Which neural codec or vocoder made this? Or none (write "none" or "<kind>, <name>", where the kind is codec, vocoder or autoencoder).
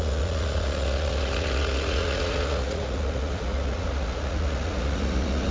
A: vocoder, Vocos